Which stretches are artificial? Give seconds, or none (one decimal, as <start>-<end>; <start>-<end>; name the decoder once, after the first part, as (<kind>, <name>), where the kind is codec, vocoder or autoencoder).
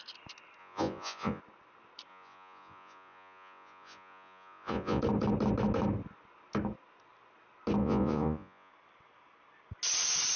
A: 0.6-1.4 (vocoder, Vocos); 2.1-5.0; 7.8-8.7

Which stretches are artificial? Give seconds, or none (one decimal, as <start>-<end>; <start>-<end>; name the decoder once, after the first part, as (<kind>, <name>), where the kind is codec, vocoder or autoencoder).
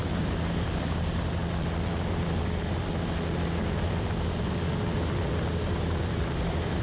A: 0.0-1.4 (vocoder, BigVGAN v2); 5.5-6.8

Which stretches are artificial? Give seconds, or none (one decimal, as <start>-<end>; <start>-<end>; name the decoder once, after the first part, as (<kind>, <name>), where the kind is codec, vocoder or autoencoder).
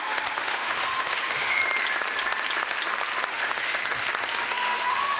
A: 0.0-1.6 (autoencoder, DAC-VAE); 3.3-3.8; 4.4-5.2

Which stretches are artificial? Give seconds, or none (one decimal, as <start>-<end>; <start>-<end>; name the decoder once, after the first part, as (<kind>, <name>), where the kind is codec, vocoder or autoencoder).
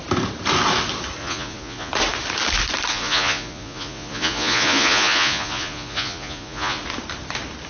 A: 1.2-1.9 (vocoder, Vocos); 2.9-6.8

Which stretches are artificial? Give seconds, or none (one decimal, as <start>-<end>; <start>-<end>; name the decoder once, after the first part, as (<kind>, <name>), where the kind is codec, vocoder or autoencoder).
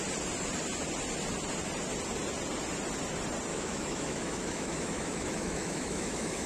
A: 3.5-6.5 (autoencoder, DAC-VAE)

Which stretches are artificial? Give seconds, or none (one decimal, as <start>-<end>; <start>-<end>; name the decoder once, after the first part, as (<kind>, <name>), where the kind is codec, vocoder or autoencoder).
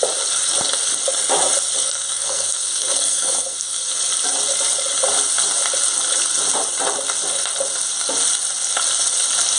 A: 1.8-3.9 (codec, SNAC)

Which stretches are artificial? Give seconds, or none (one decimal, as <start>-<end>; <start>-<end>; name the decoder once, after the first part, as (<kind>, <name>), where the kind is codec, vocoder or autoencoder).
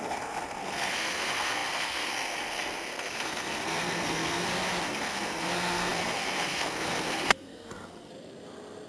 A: 0.0-4.5 (codec, SNAC); 5.0-8.1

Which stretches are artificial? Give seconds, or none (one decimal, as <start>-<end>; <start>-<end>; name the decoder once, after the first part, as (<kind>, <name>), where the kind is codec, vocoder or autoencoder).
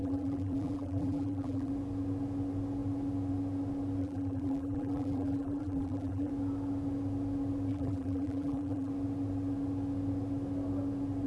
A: 0.0-1.7 (vocoder, BigVGAN v2); 4.0-6.3; 7.7-8.9